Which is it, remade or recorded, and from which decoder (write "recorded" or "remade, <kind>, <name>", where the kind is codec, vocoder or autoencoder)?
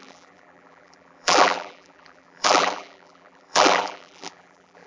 remade, vocoder, BigVGAN v2